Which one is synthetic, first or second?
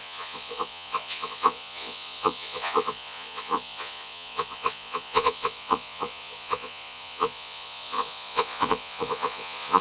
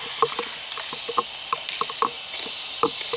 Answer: first